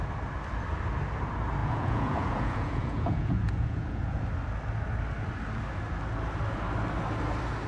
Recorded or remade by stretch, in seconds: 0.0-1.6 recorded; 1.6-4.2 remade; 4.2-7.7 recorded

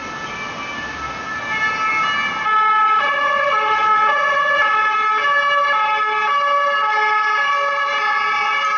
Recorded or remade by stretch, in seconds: 0.0-3.0 recorded; 3.0-4.8 remade; 4.8-8.8 recorded

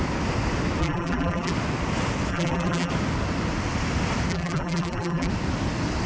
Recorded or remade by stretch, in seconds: 0.0-0.8 recorded; 0.8-1.5 remade; 1.5-2.3 recorded; 2.3-2.9 remade; 2.9-4.3 recorded; 4.3-5.3 remade; 5.3-6.1 recorded

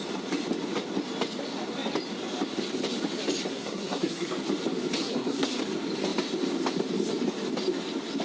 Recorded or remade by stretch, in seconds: 0.0-3.5 recorded; 3.5-4.3 remade; 4.3-5.0 recorded; 5.0-5.6 remade; 5.6-8.2 recorded

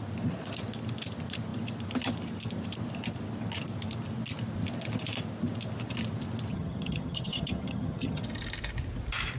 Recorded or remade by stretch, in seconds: 0.0-6.5 recorded; 6.5-8.2 remade; 8.2-9.4 recorded

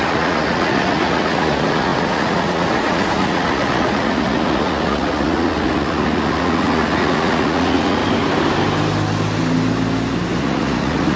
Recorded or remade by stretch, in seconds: 0.0-8.0 remade; 8.0-10.4 recorded; 10.4-11.2 remade

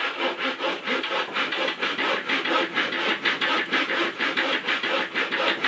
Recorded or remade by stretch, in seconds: 0.0-5.7 recorded

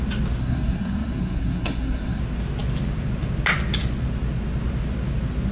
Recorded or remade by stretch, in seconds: 0.0-0.4 recorded; 0.4-2.2 remade; 2.2-5.5 recorded